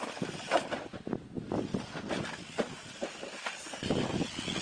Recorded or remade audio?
recorded